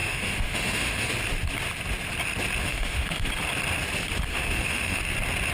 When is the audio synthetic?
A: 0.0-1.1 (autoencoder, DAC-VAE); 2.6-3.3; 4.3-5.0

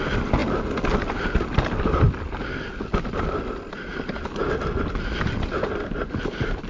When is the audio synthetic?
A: none

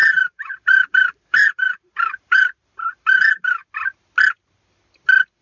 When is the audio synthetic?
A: 0.0-3.6 (vocoder, BigVGAN v2)

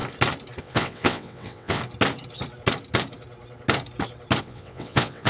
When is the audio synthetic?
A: 0.6-1.8 (vocoder, WaveNeXt); 4.4-5.3

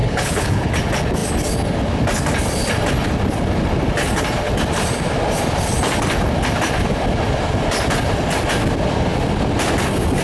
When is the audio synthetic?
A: 0.0-0.7 (codec, HILCodec)

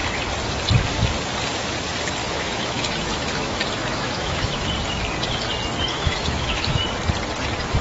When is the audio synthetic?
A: 2.2-4.7 (autoencoder, DAC-VAE); 5.9-6.8

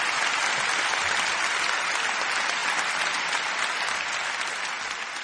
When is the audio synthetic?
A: none

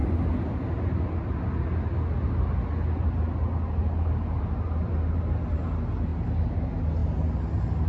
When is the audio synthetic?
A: none